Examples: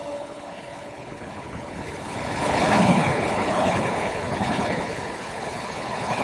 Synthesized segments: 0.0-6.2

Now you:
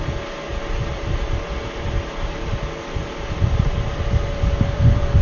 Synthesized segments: 0.5-2.5; 3.0-5.2